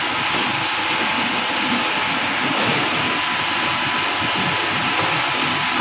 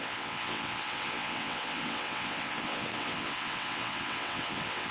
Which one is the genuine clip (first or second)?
first